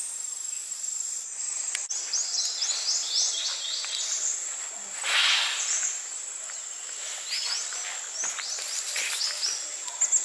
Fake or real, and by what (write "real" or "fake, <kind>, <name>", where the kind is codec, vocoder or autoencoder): real